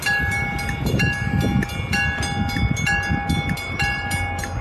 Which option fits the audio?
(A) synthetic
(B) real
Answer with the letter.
B